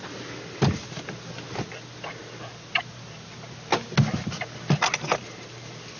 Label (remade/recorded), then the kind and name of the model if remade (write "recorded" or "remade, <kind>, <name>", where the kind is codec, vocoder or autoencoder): recorded